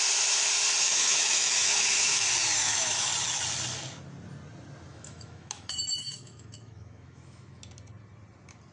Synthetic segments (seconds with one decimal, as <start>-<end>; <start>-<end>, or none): 0.8-2.2; 2.6-3.1; 4.9-7.6